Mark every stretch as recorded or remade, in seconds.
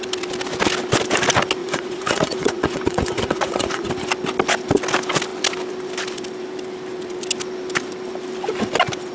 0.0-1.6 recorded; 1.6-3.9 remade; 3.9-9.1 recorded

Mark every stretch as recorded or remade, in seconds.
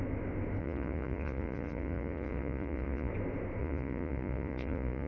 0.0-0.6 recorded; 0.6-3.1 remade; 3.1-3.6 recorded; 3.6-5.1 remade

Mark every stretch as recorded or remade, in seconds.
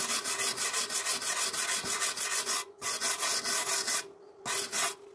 0.0-2.3 recorded; 2.3-3.1 remade; 3.1-5.1 recorded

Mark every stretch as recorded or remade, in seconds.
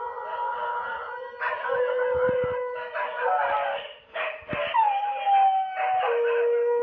0.0-6.8 recorded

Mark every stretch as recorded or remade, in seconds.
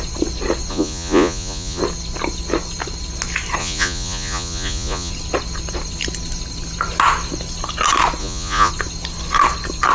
0.0-0.7 recorded; 0.7-1.8 remade; 1.8-3.6 recorded; 3.6-5.1 remade; 5.1-8.2 recorded; 8.2-8.7 remade; 8.7-9.9 recorded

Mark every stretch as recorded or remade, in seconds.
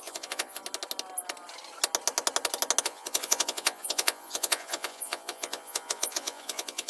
0.0-0.6 remade; 0.6-2.8 recorded; 2.8-6.9 remade